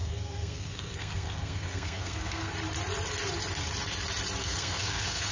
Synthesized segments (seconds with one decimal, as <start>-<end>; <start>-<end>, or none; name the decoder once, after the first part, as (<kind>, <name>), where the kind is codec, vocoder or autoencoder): 0.0-2.5 (codec, SNAC); 4.4-5.3